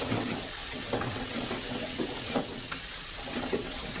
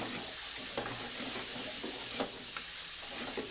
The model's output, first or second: first